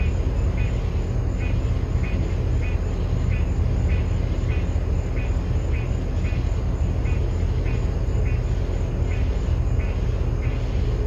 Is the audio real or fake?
real